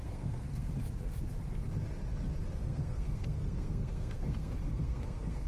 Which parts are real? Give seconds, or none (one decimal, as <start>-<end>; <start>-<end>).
0.7-2.6